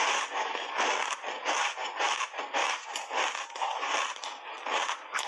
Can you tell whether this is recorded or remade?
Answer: recorded